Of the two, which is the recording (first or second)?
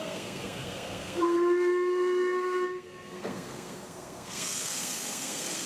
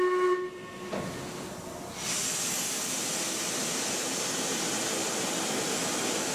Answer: second